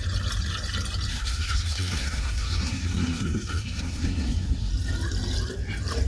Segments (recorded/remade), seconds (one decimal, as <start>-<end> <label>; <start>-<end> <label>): 0.0-1.1 recorded; 1.1-4.7 remade; 4.7-6.1 recorded

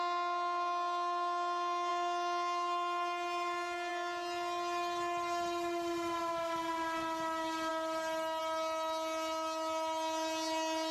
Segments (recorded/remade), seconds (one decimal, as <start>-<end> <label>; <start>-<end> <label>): 0.0-10.9 recorded

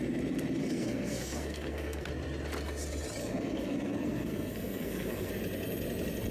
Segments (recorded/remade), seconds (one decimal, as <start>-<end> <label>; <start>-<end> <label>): 0.0-0.6 recorded; 0.6-2.1 remade; 2.1-3.2 recorded; 3.2-5.3 remade; 5.3-6.3 recorded

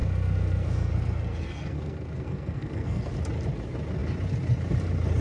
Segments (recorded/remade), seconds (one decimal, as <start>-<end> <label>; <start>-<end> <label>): 0.0-3.1 remade; 3.1-5.2 recorded

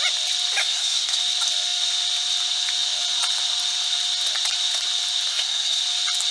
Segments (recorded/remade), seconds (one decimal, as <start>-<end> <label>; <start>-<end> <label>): 0.0-0.6 recorded; 0.6-1.2 remade; 1.2-5.3 recorded; 5.3-5.8 remade; 5.8-6.3 recorded